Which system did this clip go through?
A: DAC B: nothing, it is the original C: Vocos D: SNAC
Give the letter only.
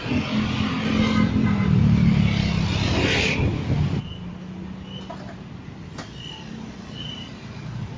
B